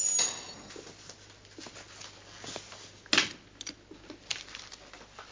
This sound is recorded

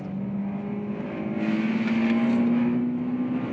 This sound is recorded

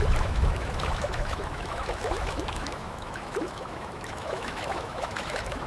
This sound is remade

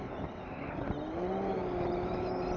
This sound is recorded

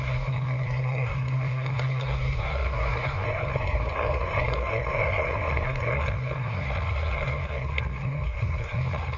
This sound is remade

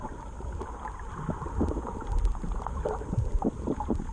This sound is recorded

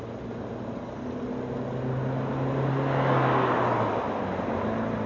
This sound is recorded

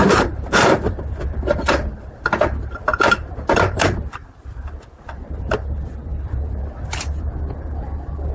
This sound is recorded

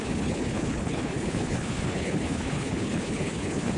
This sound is remade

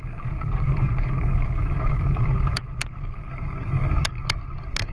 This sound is remade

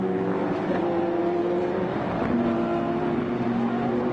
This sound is recorded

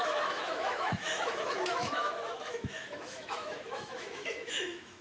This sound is remade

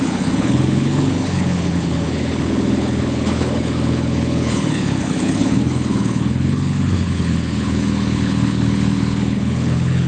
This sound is remade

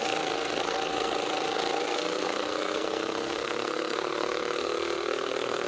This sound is remade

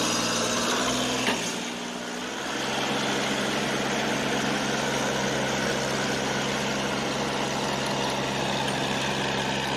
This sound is recorded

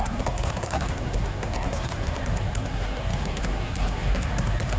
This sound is remade